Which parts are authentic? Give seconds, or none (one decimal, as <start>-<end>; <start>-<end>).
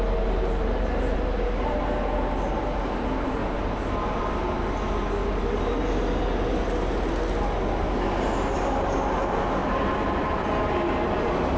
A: 0.0-11.6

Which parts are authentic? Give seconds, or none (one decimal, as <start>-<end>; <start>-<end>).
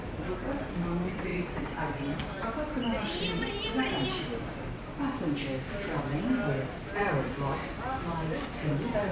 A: 0.0-9.1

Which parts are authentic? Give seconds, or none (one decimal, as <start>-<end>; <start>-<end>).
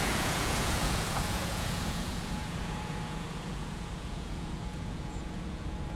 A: none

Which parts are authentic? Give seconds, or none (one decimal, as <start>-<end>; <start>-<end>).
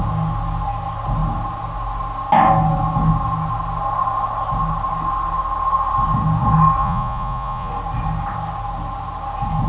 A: 0.0-6.8; 7.7-9.7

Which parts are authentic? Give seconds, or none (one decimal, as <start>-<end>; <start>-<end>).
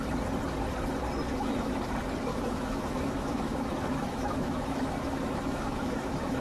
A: 0.0-1.3; 1.8-2.3